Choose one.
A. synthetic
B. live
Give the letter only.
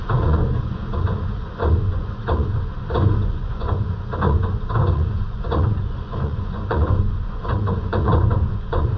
A